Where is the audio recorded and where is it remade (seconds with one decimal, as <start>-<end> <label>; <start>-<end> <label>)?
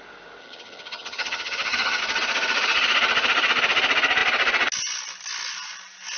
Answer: 0.0-0.4 recorded; 0.4-2.0 remade; 2.0-6.2 recorded